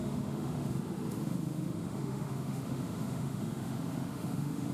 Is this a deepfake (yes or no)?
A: yes